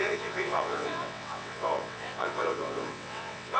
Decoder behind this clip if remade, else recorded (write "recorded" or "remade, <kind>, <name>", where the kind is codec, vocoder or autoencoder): remade, vocoder, WaveNeXt